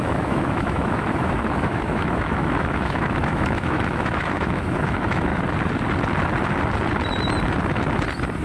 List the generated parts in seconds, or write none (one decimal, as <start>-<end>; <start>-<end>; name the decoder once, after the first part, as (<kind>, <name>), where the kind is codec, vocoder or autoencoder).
0.0-5.3 (autoencoder, DAC-VAE)